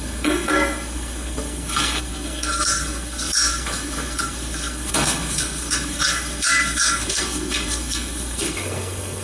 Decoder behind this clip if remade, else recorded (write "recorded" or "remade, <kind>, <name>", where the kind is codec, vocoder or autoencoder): remade, codec, SNAC